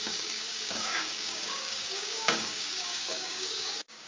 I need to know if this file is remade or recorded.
remade